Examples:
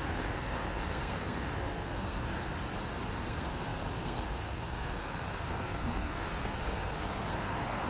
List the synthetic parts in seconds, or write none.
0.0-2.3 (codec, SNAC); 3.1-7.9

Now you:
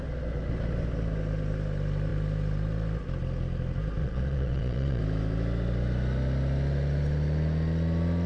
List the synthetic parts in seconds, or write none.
4.0-5.0 (vocoder, Vocos)

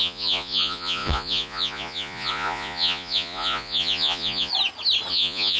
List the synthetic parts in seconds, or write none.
0.0-4.5 (vocoder, Vocos); 5.1-5.6